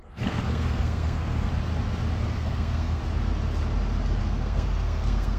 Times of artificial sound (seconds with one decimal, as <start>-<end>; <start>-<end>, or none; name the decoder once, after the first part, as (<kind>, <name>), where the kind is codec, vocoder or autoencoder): 0.0-1.5 (codec, SNAC); 2.2-3.0; 4.2-5.4